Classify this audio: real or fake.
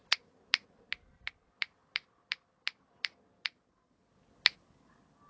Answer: real